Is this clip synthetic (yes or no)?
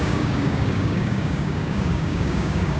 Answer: yes